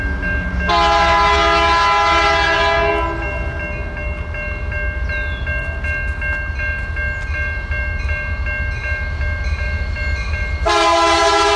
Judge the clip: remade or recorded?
recorded